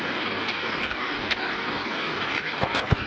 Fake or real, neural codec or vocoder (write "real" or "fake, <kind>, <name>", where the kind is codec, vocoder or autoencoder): fake, codec, DAC